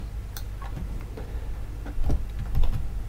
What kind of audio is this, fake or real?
real